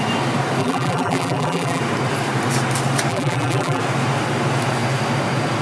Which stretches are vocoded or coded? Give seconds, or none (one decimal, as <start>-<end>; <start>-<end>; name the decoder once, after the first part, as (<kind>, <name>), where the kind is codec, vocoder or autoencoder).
0.6-1.8 (vocoder, BigVGAN v2); 3.1-3.8

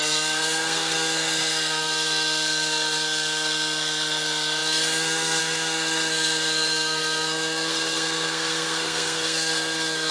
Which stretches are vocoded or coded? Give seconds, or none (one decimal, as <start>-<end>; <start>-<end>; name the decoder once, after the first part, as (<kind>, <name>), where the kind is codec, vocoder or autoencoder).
0.0-10.1 (codec, SNAC)

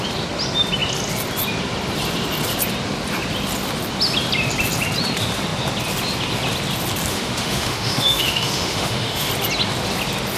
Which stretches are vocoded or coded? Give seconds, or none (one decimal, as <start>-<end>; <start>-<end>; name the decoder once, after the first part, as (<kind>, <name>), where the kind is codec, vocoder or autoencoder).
7.1-9.3 (autoencoder, DAC-VAE)

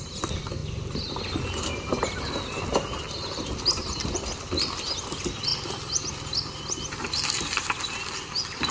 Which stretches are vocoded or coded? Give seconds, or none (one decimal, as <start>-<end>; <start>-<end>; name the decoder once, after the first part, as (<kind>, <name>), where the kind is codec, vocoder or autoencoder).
5.5-6.1 (vocoder, BigVGAN v2)

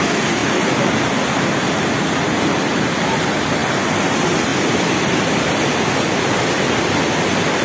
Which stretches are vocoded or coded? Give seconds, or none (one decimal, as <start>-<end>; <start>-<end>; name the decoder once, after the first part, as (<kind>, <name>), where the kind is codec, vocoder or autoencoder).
0.4-2.2 (vocoder, BigVGAN v2); 3.6-4.1; 4.5-7.6

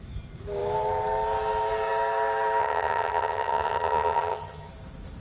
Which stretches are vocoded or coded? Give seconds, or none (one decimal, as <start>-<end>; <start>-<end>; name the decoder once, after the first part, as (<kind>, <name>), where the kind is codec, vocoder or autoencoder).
2.6-4.7 (vocoder, HiFi-GAN)